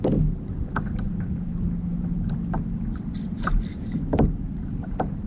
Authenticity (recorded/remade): recorded